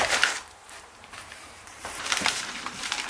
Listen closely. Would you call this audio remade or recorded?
remade